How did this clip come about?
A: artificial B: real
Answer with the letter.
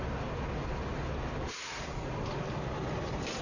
B